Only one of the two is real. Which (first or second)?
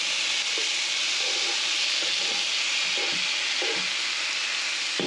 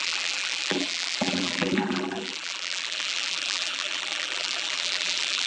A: first